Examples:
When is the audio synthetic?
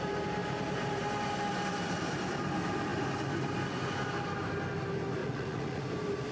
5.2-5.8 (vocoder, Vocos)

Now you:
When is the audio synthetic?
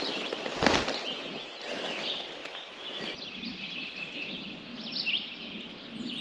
none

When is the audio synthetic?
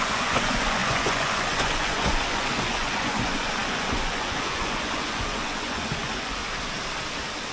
0.0-6.4 (vocoder, Vocos)